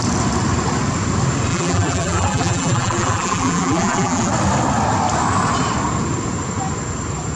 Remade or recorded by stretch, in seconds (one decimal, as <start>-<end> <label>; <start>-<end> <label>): 0.0-1.5 recorded; 1.5-4.3 remade; 4.3-7.4 recorded